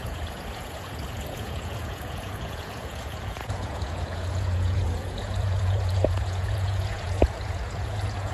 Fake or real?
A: fake